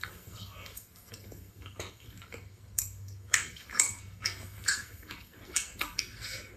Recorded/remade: remade